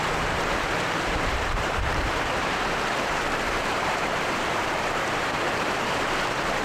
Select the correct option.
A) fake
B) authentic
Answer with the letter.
A